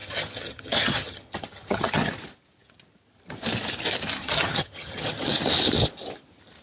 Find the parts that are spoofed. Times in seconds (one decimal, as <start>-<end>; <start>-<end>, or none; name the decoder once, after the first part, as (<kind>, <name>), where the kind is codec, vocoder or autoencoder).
0.0-2.1 (vocoder, HiFi-GAN); 4.2-5.3